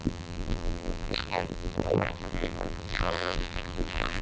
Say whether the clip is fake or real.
fake